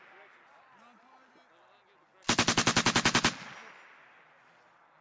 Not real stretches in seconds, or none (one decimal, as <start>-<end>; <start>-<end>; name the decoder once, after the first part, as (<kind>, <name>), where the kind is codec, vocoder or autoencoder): none